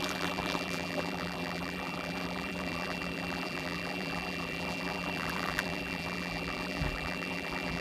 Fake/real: fake